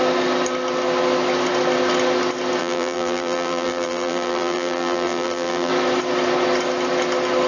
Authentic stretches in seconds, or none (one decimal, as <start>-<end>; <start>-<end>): 0.0-2.6; 5.7-7.5